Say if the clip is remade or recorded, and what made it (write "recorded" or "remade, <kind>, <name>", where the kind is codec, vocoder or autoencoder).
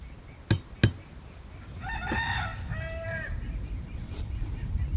recorded